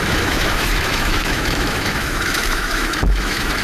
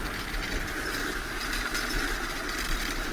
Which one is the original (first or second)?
second